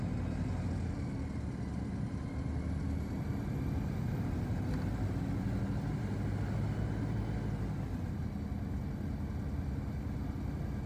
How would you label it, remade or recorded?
recorded